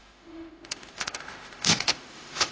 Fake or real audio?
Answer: fake